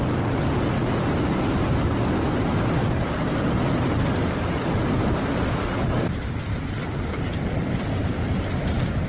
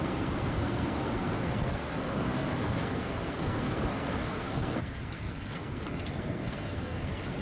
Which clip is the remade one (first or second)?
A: second